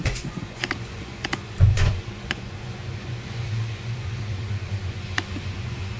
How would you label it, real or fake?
fake